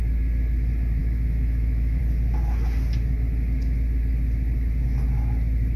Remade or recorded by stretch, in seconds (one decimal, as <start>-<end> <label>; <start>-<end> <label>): 0.0-1.0 recorded; 1.0-2.0 remade; 2.0-5.8 recorded